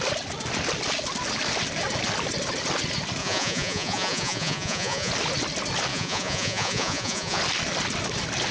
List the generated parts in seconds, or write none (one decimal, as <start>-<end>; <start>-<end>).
3.2-5.1; 5.9-7.4